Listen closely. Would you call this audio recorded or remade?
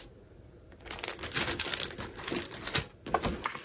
recorded